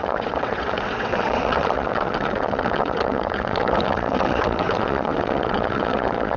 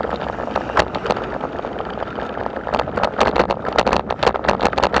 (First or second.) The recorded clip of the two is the second